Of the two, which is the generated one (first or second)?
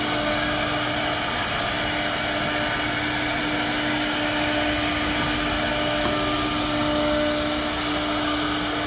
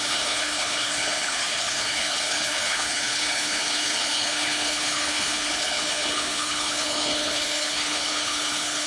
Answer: second